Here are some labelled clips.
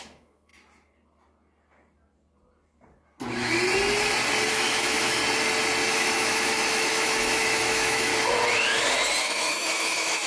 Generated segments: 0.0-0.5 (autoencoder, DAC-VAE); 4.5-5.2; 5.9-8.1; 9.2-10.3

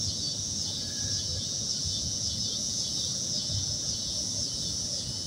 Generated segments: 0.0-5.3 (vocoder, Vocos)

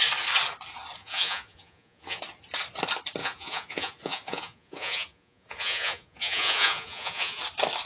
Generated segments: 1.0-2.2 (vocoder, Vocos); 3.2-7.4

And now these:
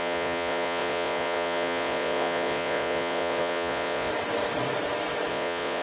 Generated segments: 0.0-4.1 (vocoder, Vocos); 5.3-5.8

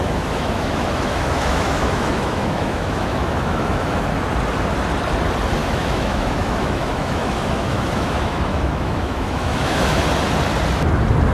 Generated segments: 0.0-4.0 (autoencoder, DAC-VAE); 5.6-10.0

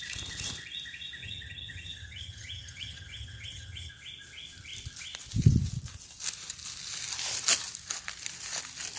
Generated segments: 1.2-3.9 (vocoder, HiFi-GAN)

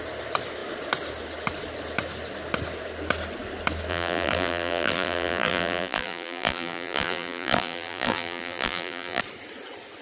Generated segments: 3.9-9.2 (vocoder, BigVGAN v2)